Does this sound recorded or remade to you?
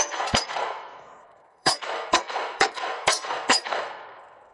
remade